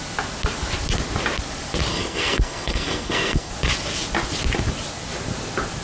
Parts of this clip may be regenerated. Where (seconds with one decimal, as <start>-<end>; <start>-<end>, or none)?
1.9-3.5